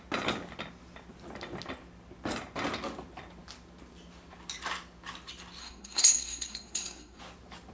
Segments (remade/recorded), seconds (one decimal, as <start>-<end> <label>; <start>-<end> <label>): 0.0-5.6 recorded; 5.6-7.2 remade; 7.2-7.7 recorded